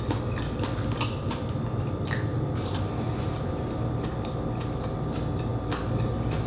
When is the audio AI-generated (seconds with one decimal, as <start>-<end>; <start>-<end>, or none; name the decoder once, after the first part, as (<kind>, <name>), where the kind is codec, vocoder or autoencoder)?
none